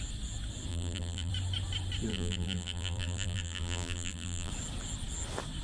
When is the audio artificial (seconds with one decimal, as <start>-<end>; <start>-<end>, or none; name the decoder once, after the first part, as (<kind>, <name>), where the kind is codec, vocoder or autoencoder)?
0.7-1.3 (vocoder, BigVGAN v2); 2.1-4.5